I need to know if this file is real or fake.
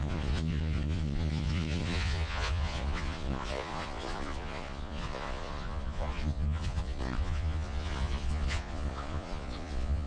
fake